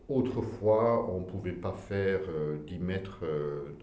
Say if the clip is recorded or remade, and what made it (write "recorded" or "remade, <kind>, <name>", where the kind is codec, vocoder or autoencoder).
recorded